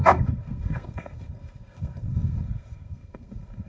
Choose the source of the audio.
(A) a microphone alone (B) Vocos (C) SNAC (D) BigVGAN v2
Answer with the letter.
C